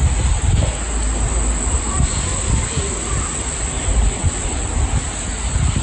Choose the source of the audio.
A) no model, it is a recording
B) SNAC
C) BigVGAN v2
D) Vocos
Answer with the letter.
A